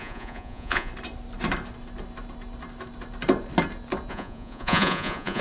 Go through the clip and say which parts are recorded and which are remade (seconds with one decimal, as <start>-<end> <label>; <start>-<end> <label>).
0.0-0.9 remade; 0.9-4.1 recorded; 4.1-5.4 remade